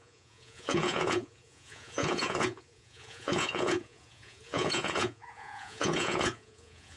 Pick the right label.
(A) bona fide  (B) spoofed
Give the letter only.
B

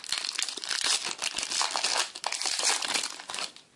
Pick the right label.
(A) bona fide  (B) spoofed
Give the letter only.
A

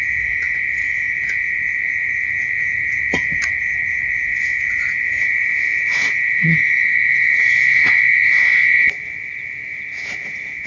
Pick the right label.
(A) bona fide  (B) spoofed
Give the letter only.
B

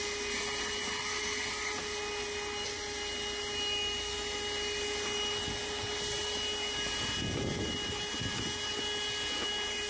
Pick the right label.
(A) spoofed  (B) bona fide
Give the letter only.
B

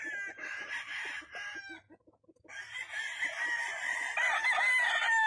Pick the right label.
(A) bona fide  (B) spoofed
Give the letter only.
A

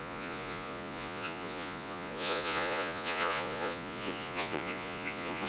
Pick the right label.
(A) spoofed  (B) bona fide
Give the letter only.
A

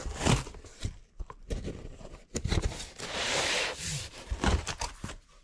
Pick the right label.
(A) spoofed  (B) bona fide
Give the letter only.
A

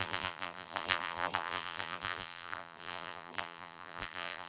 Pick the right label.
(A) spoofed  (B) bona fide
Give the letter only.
A